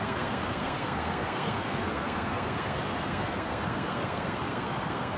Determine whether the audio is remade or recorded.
remade